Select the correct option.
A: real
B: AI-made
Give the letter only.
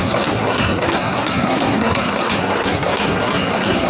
B